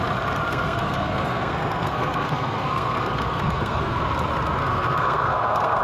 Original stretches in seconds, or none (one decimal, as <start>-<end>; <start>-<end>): 0.0-0.5; 4.0-4.6